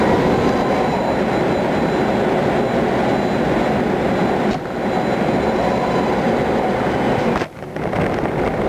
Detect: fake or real real